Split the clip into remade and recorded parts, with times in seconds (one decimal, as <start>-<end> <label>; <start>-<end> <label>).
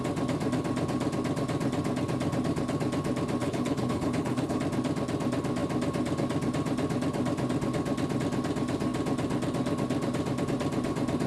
0.0-3.4 recorded; 3.4-4.6 remade; 4.6-11.3 recorded